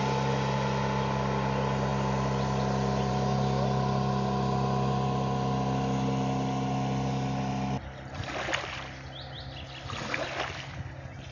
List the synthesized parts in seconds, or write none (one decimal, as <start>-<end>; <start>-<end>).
none